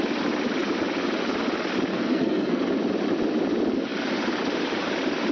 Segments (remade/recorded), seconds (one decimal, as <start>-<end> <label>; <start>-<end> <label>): 0.0-1.9 recorded; 1.9-2.6 remade; 2.6-5.3 recorded